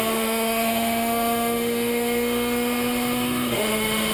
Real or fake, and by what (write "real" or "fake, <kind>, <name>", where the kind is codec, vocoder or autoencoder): fake, autoencoder, DAC-VAE